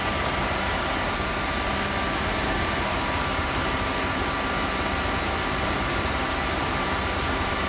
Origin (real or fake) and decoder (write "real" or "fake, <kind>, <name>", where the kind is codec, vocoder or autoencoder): fake, vocoder, BigVGAN v2